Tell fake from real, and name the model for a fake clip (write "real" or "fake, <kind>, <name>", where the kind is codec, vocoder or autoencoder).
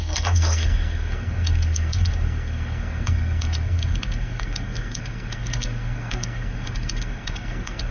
fake, codec, SNAC